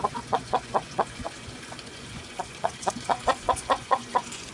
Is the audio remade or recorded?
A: remade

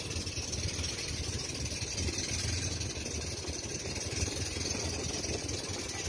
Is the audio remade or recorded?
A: recorded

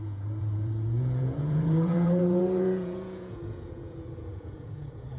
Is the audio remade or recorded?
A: remade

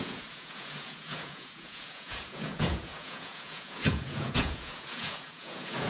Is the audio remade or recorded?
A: remade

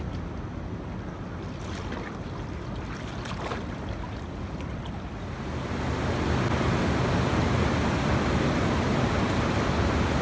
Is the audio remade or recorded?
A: recorded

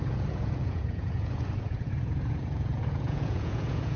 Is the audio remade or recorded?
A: remade